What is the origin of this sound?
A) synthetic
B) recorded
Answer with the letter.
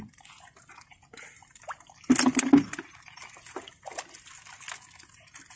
B